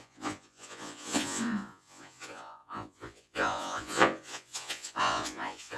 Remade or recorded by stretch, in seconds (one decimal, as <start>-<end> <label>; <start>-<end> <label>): 0.0-5.8 remade